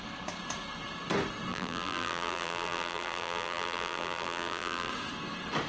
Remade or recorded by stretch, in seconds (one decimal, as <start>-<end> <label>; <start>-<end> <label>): 0.0-1.5 recorded; 1.5-4.9 remade; 4.9-5.7 recorded